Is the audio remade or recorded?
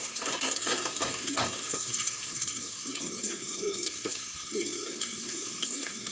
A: remade